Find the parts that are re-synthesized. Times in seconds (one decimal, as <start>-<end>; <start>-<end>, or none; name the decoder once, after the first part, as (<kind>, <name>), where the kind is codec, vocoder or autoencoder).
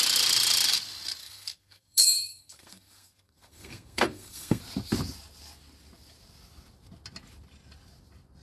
1.2-4.6 (codec, SNAC)